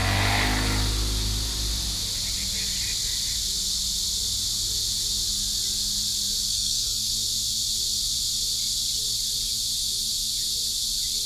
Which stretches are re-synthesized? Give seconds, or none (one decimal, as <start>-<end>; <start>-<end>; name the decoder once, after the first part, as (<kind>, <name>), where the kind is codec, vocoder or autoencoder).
6.5-7.1 (codec, SNAC)